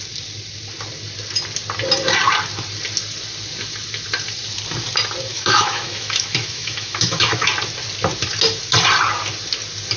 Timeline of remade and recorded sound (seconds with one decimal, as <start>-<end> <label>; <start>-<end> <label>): 0.0-5.3 recorded; 5.3-7.5 remade; 7.5-10.0 recorded

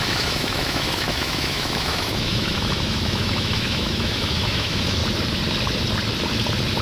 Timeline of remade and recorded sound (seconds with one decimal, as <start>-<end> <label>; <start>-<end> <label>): 0.0-5.0 remade; 5.0-6.8 recorded

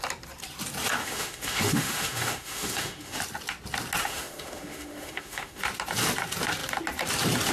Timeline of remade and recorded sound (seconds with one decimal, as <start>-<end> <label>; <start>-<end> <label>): 0.0-1.0 recorded; 1.0-3.2 remade; 3.2-4.0 recorded; 4.0-5.6 remade; 5.6-7.5 recorded

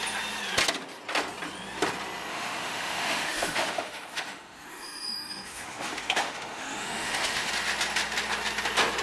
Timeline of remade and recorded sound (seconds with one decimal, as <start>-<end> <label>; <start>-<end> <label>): 0.0-2.3 recorded; 2.3-7.5 remade; 7.5-9.0 recorded

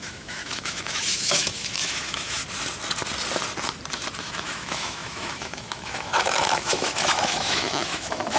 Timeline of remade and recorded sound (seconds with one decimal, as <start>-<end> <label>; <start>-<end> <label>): 0.0-2.4 remade; 2.4-4.2 recorded; 4.2-8.4 remade

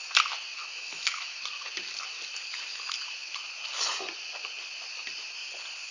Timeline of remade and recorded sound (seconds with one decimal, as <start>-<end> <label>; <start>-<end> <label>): 0.0-0.6 recorded; 0.6-1.4 remade; 1.4-5.9 recorded

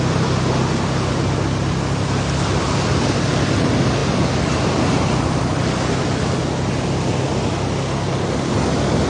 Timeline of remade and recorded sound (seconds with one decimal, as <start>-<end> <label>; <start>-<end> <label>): 0.0-9.1 recorded

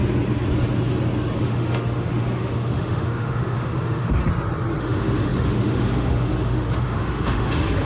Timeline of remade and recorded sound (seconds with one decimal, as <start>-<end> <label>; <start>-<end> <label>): 0.0-1.4 recorded; 1.4-4.2 remade; 4.2-4.8 recorded; 4.8-7.9 remade